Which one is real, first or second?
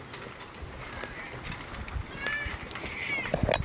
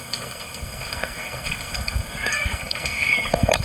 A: first